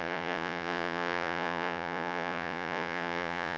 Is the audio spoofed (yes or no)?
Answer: yes